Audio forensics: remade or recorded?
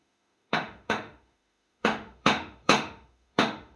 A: remade